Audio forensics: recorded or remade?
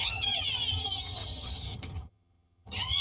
remade